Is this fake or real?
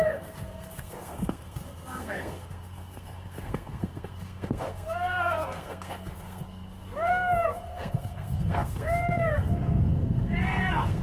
fake